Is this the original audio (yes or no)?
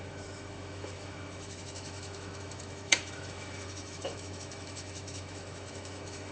no